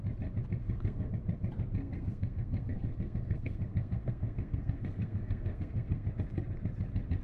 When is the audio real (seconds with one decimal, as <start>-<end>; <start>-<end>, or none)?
0.0-0.6; 1.1-1.8; 6.1-7.2